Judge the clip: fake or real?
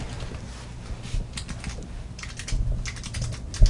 real